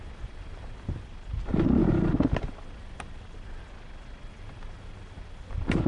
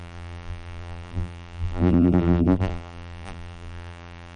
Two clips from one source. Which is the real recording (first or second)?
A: first